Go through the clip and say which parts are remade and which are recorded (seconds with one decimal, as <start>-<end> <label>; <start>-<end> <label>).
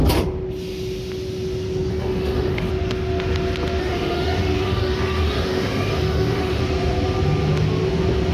0.0-1.9 recorded; 1.9-2.7 remade; 2.7-3.8 recorded; 3.8-6.6 remade; 6.6-8.3 recorded